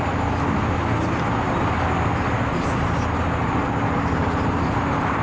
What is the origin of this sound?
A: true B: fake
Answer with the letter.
A